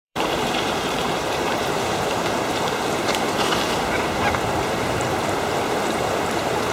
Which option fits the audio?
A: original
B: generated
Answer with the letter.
B